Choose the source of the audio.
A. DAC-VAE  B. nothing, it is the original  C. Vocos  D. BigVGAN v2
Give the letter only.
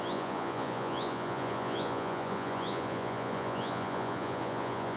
C